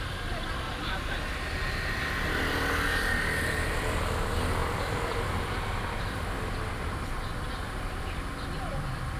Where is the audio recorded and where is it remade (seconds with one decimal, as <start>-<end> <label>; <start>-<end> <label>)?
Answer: 0.0-4.6 recorded; 4.6-8.0 remade; 8.0-9.2 recorded